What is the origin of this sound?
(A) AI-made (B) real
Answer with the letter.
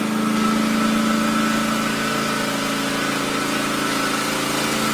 B